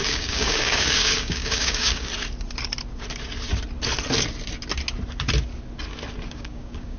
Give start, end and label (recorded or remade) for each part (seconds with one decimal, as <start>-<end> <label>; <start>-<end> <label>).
0.0-2.1 remade; 2.1-6.3 recorded; 6.3-7.0 remade